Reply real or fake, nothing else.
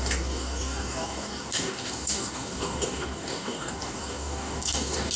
fake